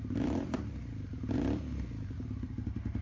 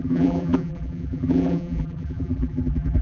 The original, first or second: first